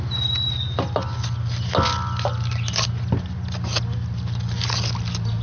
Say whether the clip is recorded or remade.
recorded